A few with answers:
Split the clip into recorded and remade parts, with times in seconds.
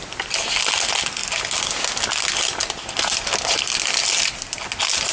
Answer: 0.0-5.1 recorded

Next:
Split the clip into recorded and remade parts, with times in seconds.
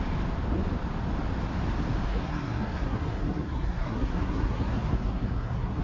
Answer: 0.0-2.1 recorded; 2.1-5.8 remade